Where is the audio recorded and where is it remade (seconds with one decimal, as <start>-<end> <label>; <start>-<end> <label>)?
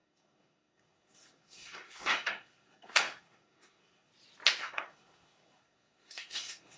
0.0-4.1 remade; 4.1-4.6 recorded; 4.6-6.8 remade